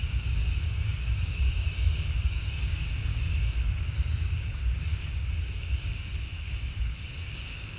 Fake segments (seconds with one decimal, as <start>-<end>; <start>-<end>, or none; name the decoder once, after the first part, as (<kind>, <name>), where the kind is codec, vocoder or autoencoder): 0.0-7.8 (codec, DAC)